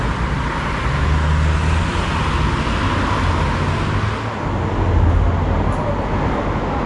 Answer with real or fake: real